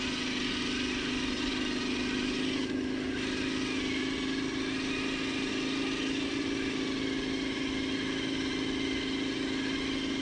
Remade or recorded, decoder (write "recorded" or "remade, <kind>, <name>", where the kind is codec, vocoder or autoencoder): recorded